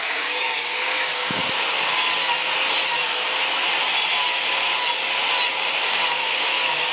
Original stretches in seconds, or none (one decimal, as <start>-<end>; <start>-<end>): 1.4-5.5